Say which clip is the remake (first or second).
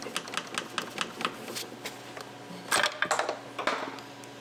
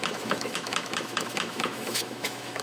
second